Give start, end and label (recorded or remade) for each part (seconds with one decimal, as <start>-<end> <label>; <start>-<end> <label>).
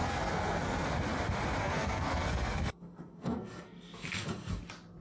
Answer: 0.0-0.9 remade; 0.9-1.6 recorded; 1.6-4.6 remade; 4.6-5.0 recorded